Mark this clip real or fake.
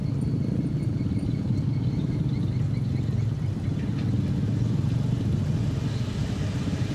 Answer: real